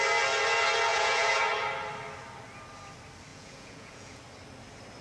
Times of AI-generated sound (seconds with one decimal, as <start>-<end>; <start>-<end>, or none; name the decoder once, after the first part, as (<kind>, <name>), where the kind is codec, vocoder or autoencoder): 0.9-1.4 (vocoder, Vocos); 3.3-4.2